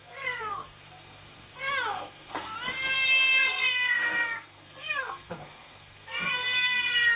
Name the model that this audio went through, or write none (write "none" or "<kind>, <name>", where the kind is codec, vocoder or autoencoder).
codec, SNAC